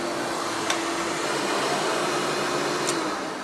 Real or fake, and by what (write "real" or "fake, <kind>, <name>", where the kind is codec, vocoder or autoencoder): real